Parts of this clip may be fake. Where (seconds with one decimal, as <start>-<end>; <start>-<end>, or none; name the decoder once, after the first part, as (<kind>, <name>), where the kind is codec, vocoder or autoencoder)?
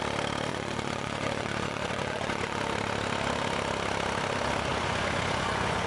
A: 0.5-2.6 (vocoder, Vocos); 4.7-5.9